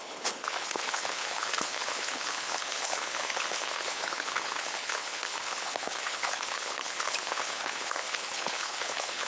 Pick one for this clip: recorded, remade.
remade